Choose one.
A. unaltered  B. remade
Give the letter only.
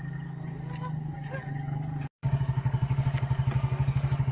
B